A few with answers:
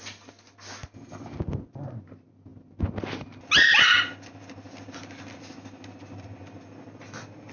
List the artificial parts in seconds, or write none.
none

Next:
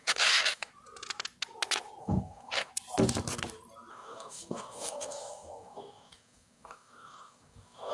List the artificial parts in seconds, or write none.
0.0-0.7 (codec, DAC); 2.0-2.7; 3.9-7.9